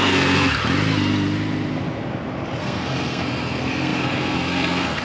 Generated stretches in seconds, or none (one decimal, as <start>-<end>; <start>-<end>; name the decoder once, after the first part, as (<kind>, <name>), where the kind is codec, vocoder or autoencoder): 0.0-0.6 (codec, SNAC); 2.6-5.0